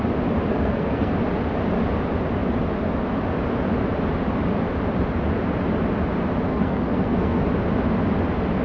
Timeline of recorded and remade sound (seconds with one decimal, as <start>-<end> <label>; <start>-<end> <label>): 0.0-0.5 recorded; 0.5-1.1 remade; 1.1-6.5 recorded; 6.5-7.5 remade; 7.5-8.6 recorded